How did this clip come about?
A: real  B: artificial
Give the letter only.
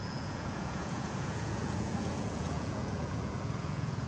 B